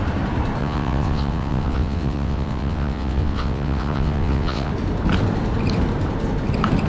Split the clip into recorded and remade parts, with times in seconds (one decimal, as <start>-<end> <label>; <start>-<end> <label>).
0.0-0.6 recorded; 0.6-4.7 remade; 4.7-6.9 recorded